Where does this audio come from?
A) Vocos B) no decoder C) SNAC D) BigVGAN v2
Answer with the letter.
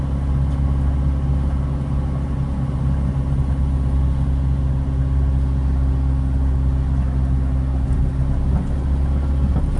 B